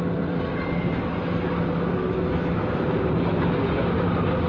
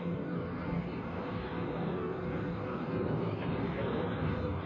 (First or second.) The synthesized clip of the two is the second